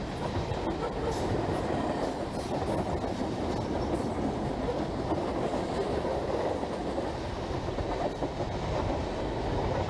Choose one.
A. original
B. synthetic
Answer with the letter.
A